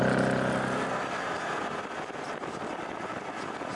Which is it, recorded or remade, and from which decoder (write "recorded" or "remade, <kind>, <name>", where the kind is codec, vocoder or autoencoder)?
recorded